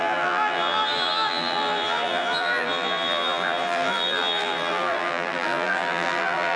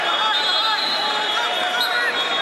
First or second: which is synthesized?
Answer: first